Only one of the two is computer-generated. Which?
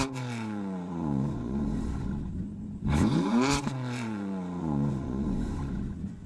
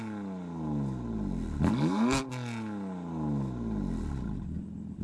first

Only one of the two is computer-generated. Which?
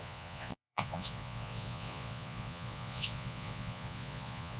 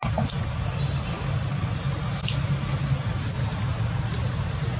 first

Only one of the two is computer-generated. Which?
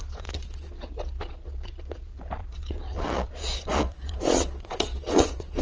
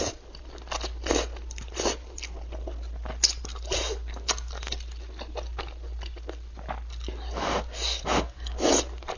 first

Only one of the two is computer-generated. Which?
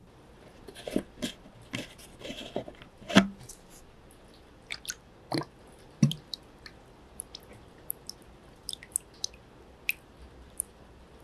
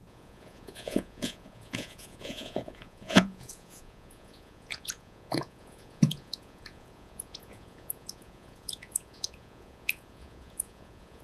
second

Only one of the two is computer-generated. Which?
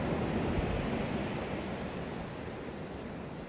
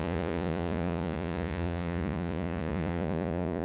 second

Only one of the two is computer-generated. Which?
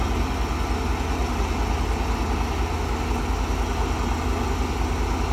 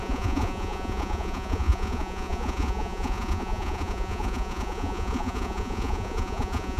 second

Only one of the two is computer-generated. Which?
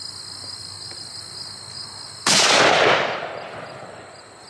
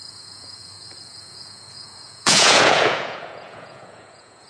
second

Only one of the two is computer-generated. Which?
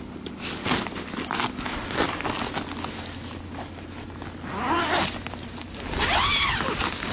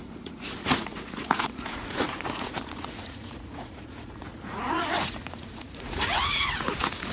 second